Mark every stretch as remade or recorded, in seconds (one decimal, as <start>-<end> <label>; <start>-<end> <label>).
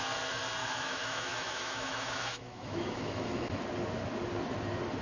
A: 0.0-0.6 recorded; 0.6-3.6 remade; 3.6-5.0 recorded